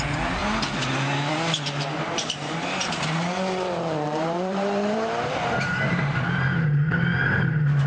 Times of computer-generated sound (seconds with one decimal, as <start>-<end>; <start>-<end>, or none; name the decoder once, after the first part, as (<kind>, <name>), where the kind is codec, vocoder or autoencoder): 0.0-0.4 (vocoder, BigVGAN v2); 2.0-7.9